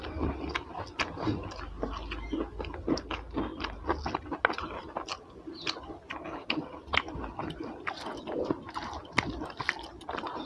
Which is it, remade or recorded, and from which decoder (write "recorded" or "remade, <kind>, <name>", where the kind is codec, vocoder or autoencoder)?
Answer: recorded